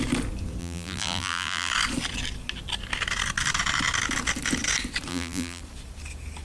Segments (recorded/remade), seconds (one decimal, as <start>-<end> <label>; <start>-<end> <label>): 0.0-0.6 recorded; 0.6-1.7 remade; 1.7-5.1 recorded; 5.1-5.6 remade; 5.6-6.4 recorded

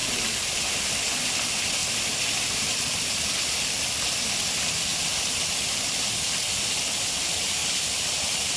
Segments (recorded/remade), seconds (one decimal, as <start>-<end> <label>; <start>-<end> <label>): 0.0-1.8 recorded; 1.8-4.2 remade; 4.2-7.6 recorded; 7.6-8.6 remade

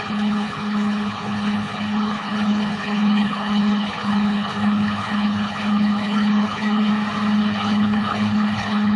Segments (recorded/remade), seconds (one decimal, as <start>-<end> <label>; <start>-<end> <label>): 0.0-6.9 remade; 6.9-7.4 recorded; 7.4-9.0 remade

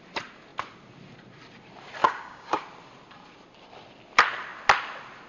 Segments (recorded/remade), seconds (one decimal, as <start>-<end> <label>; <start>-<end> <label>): 0.0-2.0 recorded; 2.0-2.6 remade; 2.6-5.3 recorded

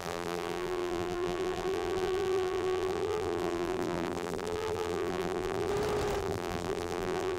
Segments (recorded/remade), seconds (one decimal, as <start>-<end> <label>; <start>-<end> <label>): 0.0-5.7 remade; 5.7-6.2 recorded; 6.2-7.4 remade

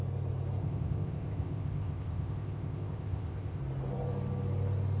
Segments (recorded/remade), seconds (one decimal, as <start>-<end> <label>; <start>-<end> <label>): 0.0-0.6 recorded; 0.6-3.6 remade; 3.6-5.0 recorded

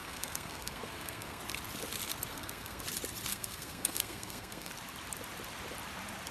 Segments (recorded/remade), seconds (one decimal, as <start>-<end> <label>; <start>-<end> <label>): 0.0-1.4 remade; 1.4-2.3 recorded; 2.3-2.8 remade; 2.8-3.3 recorded; 3.3-4.7 remade; 4.7-6.3 recorded

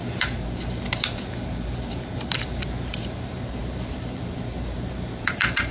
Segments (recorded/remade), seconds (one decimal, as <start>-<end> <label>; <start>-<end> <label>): 0.0-5.7 remade